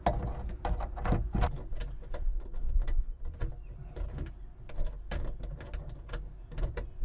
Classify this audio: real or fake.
real